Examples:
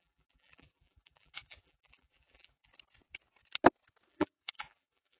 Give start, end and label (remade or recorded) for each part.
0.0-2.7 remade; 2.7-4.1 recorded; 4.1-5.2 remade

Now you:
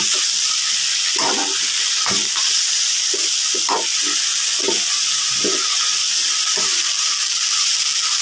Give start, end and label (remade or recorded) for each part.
0.0-1.4 remade; 1.4-6.3 recorded; 6.3-6.7 remade; 6.7-7.2 recorded; 7.2-8.2 remade

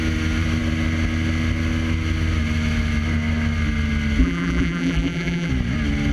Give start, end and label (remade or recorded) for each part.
0.0-4.2 recorded; 4.2-5.5 remade; 5.5-6.1 recorded

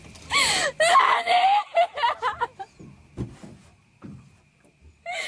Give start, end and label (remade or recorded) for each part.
0.0-0.9 recorded; 0.9-1.9 remade; 1.9-3.4 recorded; 3.4-5.3 remade

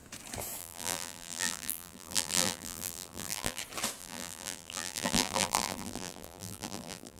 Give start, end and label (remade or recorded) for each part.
0.0-0.6 recorded; 0.6-3.6 remade; 3.6-4.0 recorded; 4.0-7.2 remade

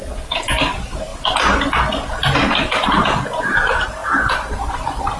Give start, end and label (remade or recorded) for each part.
0.0-1.1 remade; 1.1-3.4 recorded; 3.4-4.0 remade; 4.0-4.7 recorded; 4.7-5.2 remade

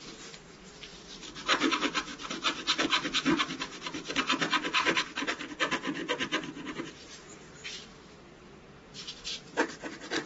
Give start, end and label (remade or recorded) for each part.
0.0-6.0 recorded; 6.0-9.9 remade; 9.9-10.3 recorded